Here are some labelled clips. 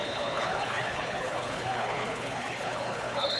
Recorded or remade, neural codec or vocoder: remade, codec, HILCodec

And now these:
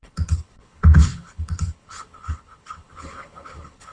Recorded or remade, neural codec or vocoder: remade, codec, HILCodec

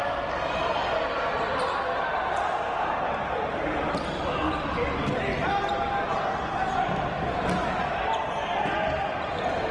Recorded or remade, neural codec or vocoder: recorded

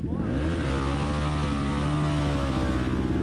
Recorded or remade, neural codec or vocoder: recorded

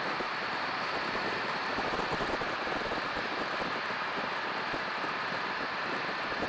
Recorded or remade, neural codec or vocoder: recorded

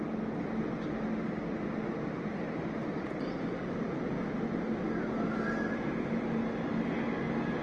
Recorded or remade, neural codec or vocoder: recorded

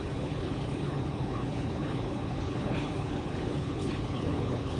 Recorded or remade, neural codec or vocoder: remade, codec, HILCodec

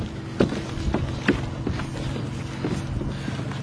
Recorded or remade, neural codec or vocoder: recorded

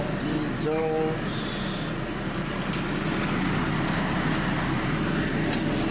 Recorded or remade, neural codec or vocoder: recorded